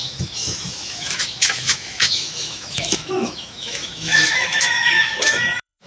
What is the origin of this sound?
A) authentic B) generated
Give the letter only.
B